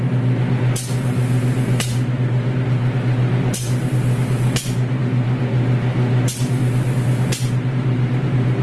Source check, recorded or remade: recorded